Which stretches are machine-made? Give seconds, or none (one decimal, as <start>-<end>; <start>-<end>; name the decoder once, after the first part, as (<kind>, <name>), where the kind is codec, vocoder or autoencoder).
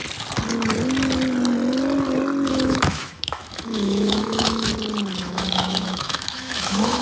2.5-4.7 (autoencoder, DAC-VAE); 5.2-7.0